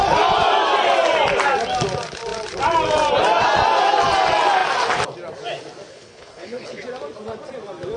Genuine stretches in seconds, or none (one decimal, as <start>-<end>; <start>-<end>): 0.0-5.9; 6.8-8.0